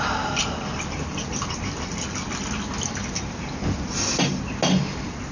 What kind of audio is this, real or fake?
real